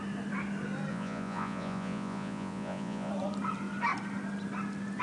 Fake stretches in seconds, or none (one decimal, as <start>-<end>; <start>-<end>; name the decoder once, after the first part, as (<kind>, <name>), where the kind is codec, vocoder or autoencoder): 0.9-3.1 (vocoder, Vocos)